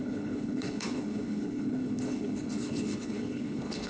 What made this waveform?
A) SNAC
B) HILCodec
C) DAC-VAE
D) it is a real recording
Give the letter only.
B